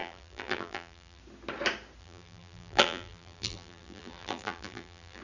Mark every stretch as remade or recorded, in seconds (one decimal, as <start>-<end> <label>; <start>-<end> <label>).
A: 0.0-1.2 remade; 1.2-2.0 recorded; 2.0-5.2 remade